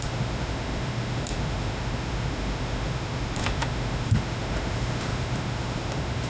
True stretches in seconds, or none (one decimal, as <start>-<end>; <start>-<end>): none